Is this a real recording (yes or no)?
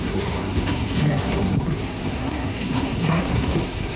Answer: no